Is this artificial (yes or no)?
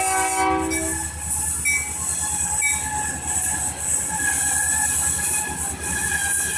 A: no